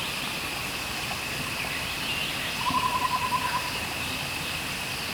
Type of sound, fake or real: real